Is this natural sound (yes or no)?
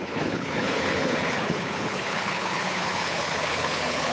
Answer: no